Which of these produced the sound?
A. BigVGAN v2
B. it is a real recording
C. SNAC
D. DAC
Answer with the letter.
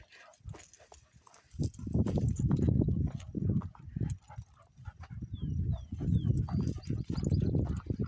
B